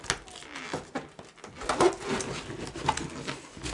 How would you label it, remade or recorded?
recorded